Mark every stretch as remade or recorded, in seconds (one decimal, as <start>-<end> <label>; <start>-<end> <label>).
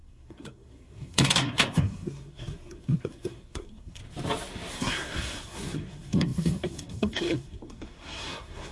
0.0-4.0 remade; 4.0-4.7 recorded; 4.7-8.7 remade